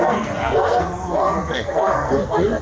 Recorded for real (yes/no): no